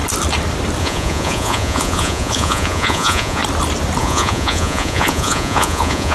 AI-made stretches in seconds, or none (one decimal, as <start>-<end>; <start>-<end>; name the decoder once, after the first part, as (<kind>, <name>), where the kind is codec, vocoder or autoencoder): 0.8-3.4 (vocoder, Vocos); 4.0-6.1